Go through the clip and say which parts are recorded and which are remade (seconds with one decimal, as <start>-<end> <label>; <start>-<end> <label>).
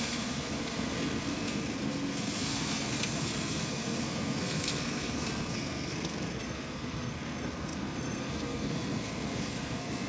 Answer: 0.0-10.1 remade